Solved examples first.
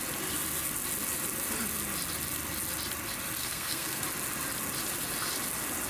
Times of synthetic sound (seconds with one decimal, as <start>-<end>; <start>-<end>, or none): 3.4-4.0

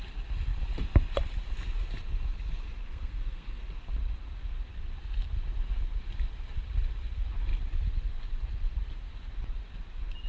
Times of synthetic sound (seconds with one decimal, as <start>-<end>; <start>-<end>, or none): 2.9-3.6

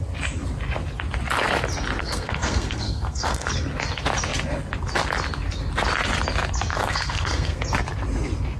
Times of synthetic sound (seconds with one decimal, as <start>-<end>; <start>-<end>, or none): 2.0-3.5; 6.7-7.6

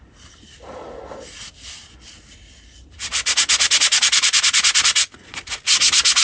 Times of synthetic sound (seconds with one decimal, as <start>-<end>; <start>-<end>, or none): none